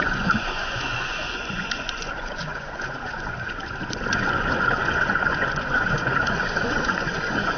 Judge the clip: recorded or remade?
remade